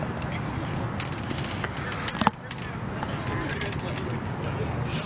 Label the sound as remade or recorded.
recorded